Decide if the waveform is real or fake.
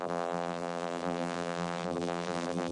fake